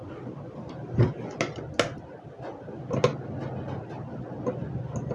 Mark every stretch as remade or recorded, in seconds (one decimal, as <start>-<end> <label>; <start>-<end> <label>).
0.0-5.1 recorded

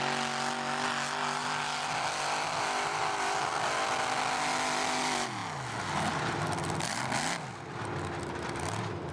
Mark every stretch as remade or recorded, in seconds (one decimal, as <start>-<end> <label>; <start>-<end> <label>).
0.0-9.1 recorded

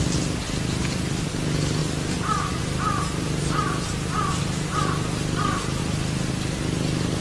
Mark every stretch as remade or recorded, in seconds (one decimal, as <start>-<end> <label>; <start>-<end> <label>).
0.0-7.2 recorded

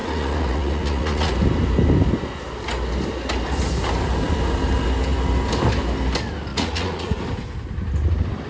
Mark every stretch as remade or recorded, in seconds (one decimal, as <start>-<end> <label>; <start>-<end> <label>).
0.0-1.3 remade; 1.3-6.5 recorded; 6.5-7.2 remade; 7.2-8.5 recorded

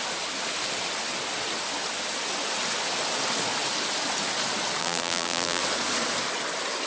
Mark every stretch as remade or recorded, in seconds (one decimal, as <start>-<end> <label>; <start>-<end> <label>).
0.0-4.8 recorded; 4.8-5.6 remade; 5.6-6.9 recorded

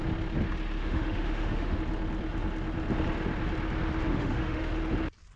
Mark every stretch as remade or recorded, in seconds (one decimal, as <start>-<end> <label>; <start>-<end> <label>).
0.0-0.8 recorded; 0.8-1.8 remade; 1.8-4.1 recorded; 4.1-4.7 remade; 4.7-5.4 recorded

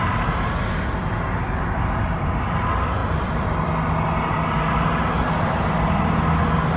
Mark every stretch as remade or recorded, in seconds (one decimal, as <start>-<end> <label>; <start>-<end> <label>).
0.0-3.0 recorded; 3.0-3.7 remade; 3.7-6.8 recorded

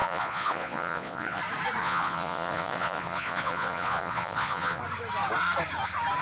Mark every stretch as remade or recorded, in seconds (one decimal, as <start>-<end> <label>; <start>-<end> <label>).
0.0-1.4 remade; 1.4-1.8 recorded; 1.8-4.8 remade; 4.8-6.2 recorded